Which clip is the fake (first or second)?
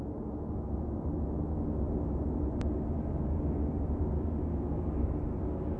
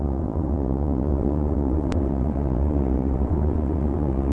second